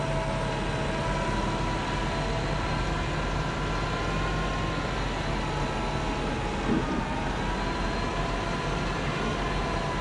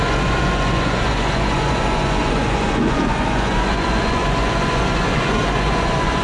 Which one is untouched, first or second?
first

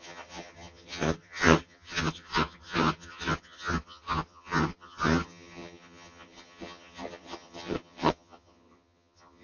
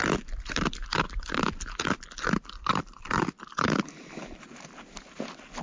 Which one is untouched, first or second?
second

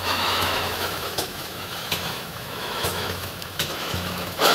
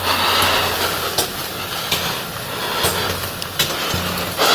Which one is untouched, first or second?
second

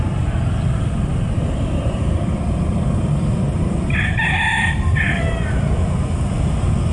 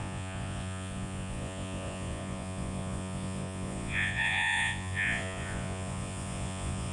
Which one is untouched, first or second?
first